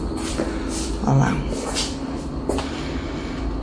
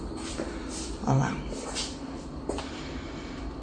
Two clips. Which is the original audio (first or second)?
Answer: first